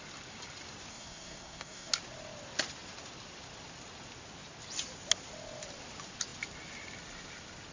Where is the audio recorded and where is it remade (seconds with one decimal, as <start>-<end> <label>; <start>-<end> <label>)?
0.0-0.9 recorded; 0.9-1.9 remade; 1.9-7.7 recorded